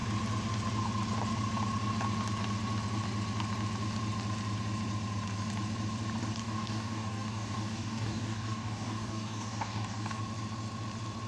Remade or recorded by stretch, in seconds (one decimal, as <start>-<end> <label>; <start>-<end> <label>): 0.0-6.4 recorded; 6.4-10.2 remade; 10.2-11.3 recorded